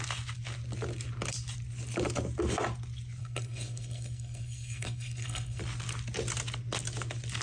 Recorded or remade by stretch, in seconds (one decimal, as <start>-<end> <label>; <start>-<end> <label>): 0.0-3.2 recorded; 3.2-5.6 remade; 5.6-7.4 recorded